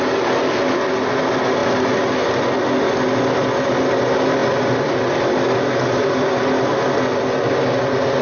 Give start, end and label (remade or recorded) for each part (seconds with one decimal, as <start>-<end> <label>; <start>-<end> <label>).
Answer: 0.0-8.2 recorded